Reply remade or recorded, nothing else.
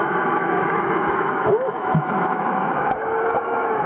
remade